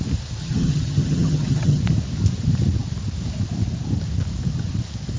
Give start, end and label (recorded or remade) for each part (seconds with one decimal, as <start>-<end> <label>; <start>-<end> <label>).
0.0-0.4 recorded; 0.4-1.8 remade; 1.8-5.2 recorded